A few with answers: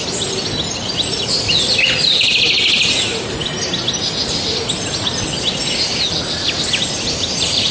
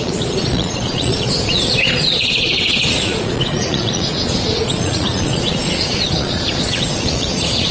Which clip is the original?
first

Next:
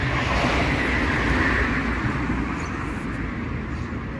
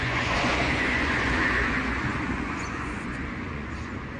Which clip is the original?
first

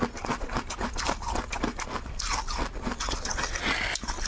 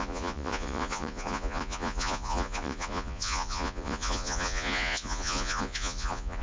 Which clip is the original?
first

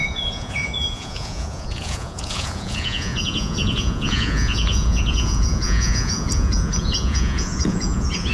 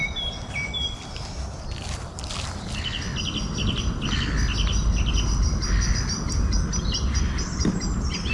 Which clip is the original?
second